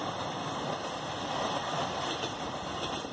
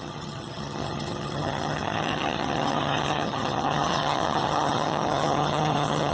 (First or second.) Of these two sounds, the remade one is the second